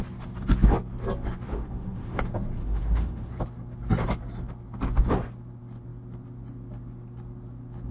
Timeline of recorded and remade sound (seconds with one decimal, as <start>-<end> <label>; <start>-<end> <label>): 0.0-1.5 recorded; 1.5-2.2 remade; 2.2-2.6 recorded; 2.6-3.3 remade; 3.3-7.9 recorded